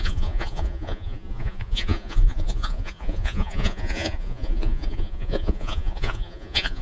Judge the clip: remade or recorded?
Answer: remade